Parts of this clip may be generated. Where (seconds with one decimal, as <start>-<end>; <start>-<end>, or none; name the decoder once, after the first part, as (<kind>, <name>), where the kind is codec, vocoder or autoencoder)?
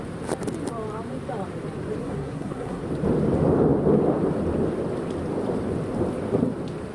2.0-2.8 (codec, SNAC)